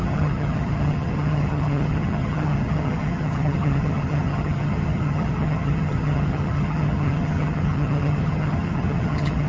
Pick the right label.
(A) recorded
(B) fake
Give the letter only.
B